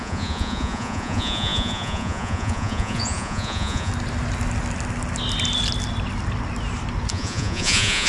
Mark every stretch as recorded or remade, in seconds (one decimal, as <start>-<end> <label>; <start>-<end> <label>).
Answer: 0.0-3.9 remade; 3.9-7.1 recorded; 7.1-8.1 remade